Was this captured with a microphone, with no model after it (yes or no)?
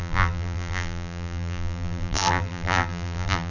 no